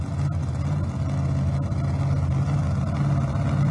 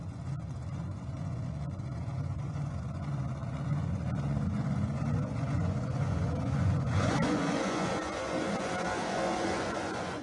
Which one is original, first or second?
first